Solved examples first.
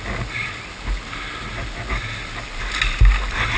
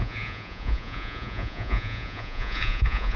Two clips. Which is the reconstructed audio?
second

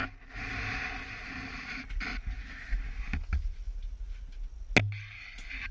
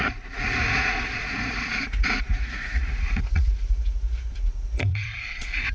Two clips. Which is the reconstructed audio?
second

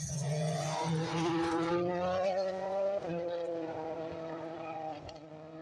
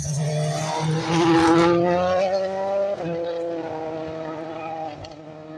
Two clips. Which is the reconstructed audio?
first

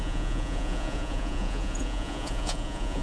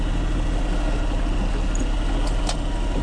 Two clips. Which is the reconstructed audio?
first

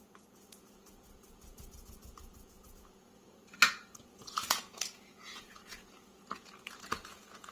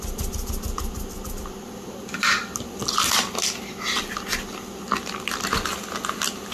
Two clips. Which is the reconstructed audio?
first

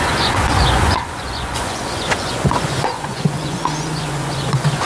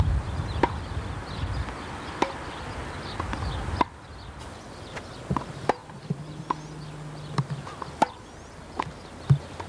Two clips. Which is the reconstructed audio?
first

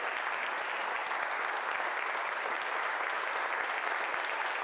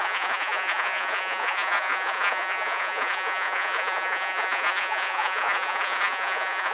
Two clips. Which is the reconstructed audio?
second